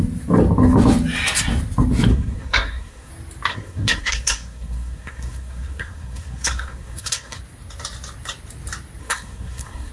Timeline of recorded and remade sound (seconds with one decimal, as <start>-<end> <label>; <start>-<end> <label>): 0.0-2.1 recorded; 2.1-3.1 remade; 3.1-3.5 recorded; 3.5-7.4 remade; 7.4-9.0 recorded; 9.0-9.9 remade